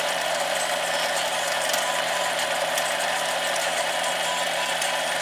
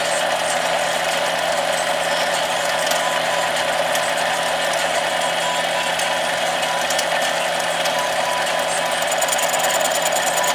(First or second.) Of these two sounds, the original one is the second